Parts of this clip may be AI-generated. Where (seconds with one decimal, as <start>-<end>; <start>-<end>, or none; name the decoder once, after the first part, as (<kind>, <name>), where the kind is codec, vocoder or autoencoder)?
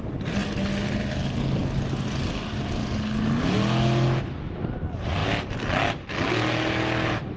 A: none